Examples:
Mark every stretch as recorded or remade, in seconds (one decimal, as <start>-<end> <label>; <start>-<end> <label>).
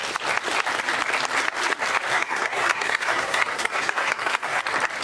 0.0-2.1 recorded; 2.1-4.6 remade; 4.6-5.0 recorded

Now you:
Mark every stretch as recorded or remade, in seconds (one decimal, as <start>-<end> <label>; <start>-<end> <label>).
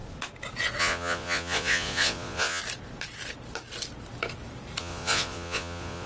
0.0-0.8 recorded; 0.8-2.6 remade; 2.6-4.8 recorded; 4.8-6.1 remade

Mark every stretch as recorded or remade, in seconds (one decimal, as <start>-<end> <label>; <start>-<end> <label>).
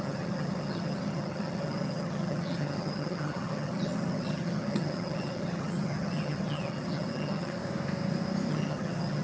0.0-7.6 remade; 7.6-8.5 recorded; 8.5-9.2 remade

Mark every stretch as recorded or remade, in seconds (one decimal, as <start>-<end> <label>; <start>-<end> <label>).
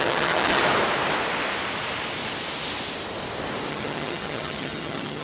0.0-0.6 remade; 0.6-3.7 recorded; 3.7-5.2 remade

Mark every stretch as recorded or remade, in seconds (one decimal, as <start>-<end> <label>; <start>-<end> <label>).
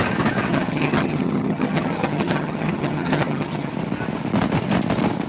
0.0-0.5 recorded; 0.5-3.7 remade; 3.7-5.3 recorded